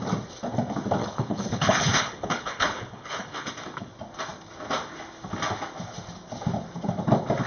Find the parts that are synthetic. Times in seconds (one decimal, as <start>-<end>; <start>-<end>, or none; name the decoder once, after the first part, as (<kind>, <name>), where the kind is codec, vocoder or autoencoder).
1.0-3.5 (codec, HILCodec)